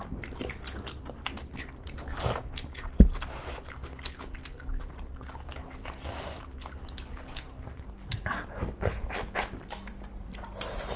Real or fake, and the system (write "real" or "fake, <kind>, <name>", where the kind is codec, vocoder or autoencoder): real